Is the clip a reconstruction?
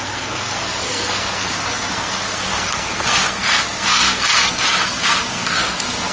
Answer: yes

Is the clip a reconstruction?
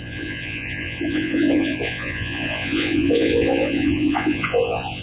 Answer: yes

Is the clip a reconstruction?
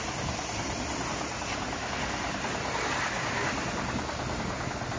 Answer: no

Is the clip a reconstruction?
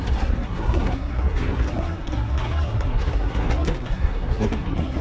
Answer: yes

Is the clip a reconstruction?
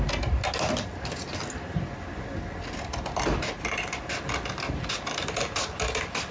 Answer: no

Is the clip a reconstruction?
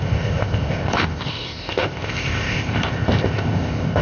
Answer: yes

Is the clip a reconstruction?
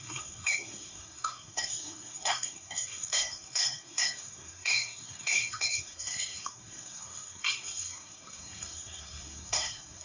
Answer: yes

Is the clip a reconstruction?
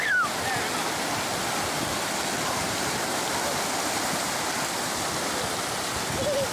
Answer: no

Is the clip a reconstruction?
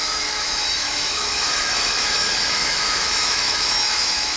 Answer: yes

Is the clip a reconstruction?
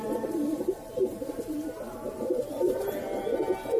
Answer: yes